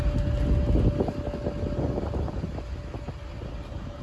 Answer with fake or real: real